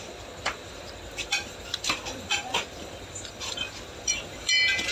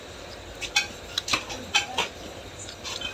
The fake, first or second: first